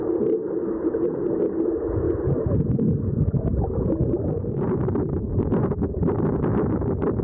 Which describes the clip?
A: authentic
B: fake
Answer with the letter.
A